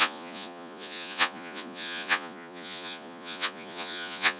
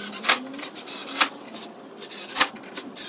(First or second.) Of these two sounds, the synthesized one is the first